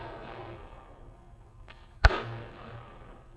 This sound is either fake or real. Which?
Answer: fake